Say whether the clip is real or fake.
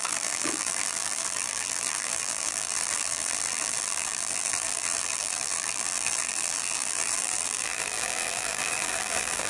fake